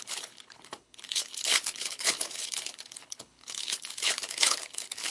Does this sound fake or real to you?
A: fake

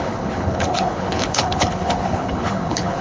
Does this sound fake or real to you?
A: fake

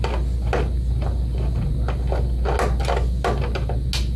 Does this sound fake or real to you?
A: real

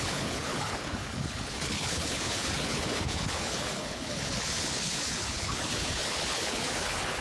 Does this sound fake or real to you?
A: fake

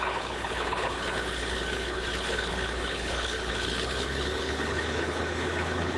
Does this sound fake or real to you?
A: fake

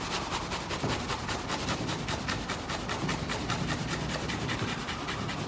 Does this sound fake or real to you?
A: real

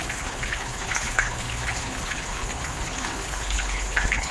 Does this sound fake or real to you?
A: fake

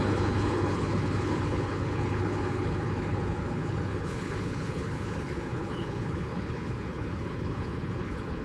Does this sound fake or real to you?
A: fake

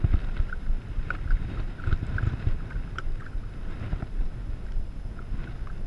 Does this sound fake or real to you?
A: real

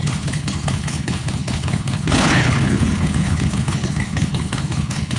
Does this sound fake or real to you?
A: fake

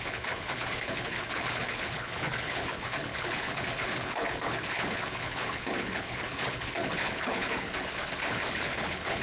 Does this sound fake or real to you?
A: fake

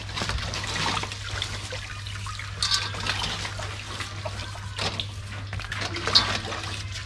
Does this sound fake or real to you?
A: real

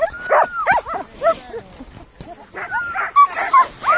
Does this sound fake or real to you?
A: real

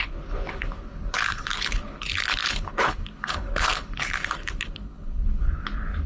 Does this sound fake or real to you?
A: fake